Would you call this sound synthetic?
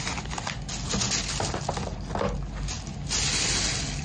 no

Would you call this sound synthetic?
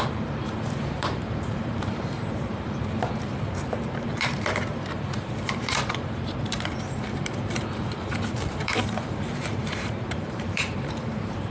yes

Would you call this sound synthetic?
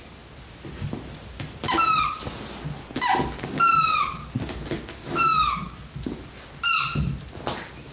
no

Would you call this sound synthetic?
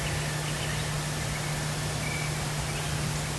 no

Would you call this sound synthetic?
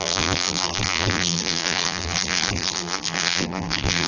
yes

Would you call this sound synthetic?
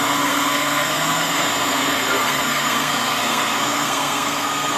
yes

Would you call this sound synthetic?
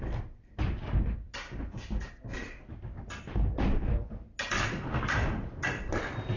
no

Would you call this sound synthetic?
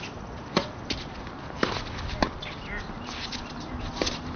no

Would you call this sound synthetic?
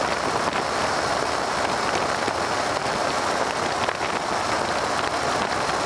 no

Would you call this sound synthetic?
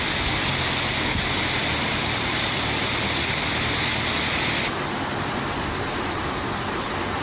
no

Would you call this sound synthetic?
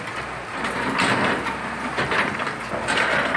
no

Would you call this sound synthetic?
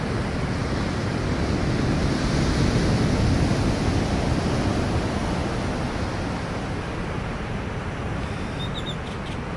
no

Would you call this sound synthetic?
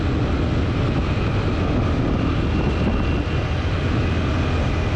no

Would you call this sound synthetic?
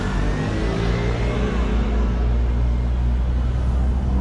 no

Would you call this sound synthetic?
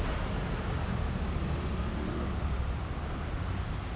no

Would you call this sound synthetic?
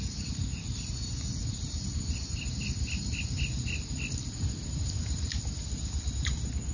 yes